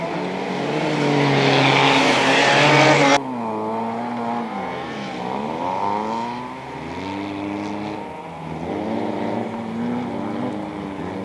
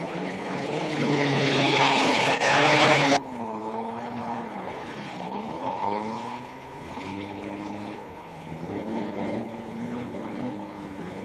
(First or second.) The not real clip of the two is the second